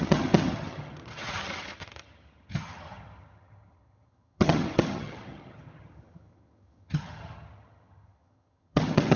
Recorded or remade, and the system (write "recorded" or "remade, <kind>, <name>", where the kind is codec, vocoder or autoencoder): remade, vocoder, HiFi-GAN